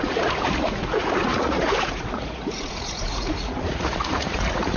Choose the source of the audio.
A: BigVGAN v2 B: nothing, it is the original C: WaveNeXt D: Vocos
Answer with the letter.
D